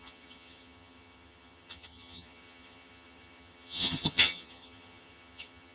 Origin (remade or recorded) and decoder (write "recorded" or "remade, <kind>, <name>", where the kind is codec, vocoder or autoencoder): remade, vocoder, HiFi-GAN